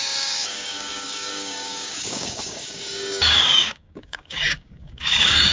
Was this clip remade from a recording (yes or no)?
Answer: yes